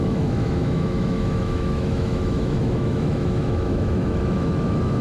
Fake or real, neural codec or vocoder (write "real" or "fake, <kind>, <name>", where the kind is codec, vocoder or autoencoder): fake, autoencoder, DAC-VAE